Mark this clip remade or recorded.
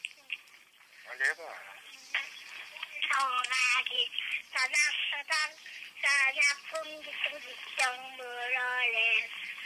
remade